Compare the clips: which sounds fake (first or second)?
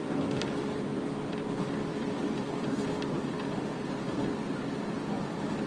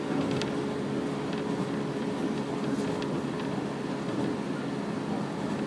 first